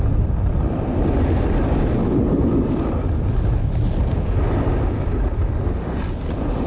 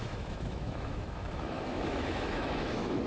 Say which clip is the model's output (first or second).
second